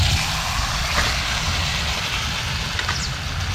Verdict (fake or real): real